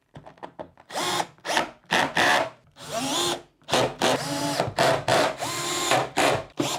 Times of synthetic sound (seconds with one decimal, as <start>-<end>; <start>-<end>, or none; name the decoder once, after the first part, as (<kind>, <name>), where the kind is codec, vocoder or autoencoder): 5.1-6.8 (vocoder, BigVGAN v2)

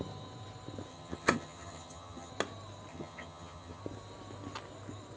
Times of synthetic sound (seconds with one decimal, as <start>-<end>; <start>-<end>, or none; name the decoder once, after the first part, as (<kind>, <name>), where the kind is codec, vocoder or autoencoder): 0.9-2.3 (vocoder, HiFi-GAN); 2.9-3.8

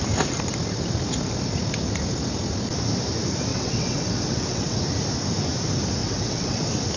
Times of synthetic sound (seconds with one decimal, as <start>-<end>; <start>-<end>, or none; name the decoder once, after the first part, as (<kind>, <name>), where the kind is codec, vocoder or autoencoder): 3.5-4.8 (vocoder, WaveNeXt); 6.0-6.6

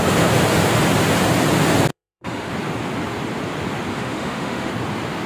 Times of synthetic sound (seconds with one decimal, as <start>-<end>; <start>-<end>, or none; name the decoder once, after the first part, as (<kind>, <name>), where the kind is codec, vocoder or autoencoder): 1.9-2.5 (autoencoder, DAC-VAE); 3.9-4.7

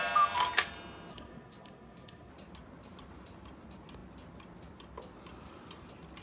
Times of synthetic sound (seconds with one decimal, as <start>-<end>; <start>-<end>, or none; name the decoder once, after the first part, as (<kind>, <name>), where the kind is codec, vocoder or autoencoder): 1.1-2.3 (codec, SNAC)

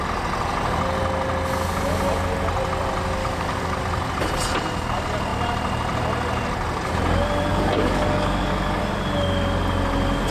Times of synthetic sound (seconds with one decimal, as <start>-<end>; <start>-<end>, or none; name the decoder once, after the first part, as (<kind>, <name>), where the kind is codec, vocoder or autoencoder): 3.2-3.8 (codec, DAC); 7.5-8.8